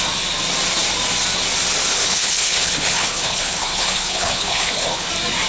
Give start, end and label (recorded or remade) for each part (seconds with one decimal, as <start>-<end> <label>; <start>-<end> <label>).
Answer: 0.0-1.9 recorded; 1.9-5.1 remade; 5.1-5.5 recorded